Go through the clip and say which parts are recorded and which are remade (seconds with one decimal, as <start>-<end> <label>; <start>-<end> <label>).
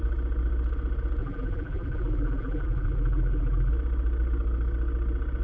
0.0-1.2 recorded; 1.2-3.7 remade; 3.7-5.4 recorded